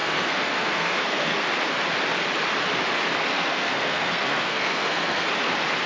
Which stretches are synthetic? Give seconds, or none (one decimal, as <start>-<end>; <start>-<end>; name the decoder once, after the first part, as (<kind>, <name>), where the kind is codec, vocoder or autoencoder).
0.0-1.4 (codec, SNAC); 3.3-5.3